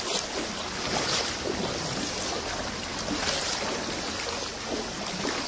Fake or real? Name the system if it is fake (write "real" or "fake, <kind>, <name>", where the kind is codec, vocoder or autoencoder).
real